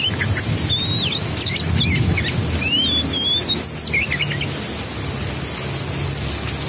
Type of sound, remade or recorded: recorded